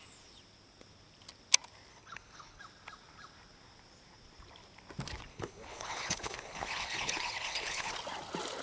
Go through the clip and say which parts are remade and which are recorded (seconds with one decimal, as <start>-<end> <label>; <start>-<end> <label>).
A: 0.0-1.9 recorded; 1.9-2.6 remade; 2.6-5.3 recorded; 5.3-7.9 remade; 7.9-8.6 recorded